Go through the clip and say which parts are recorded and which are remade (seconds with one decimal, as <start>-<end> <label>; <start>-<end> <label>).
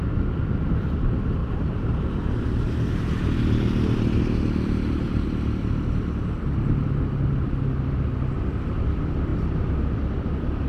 0.0-1.4 recorded; 1.4-4.2 remade; 4.2-10.7 recorded